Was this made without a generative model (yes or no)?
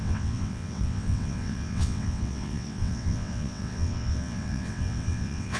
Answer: no